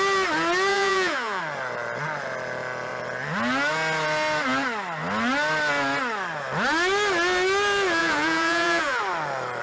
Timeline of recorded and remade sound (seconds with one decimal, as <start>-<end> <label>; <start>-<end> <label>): 0.0-0.7 recorded; 0.7-1.4 remade; 1.4-8.0 recorded; 8.0-9.0 remade; 9.0-9.6 recorded